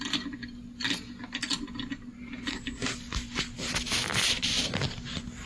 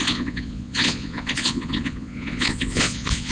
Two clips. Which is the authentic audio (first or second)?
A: first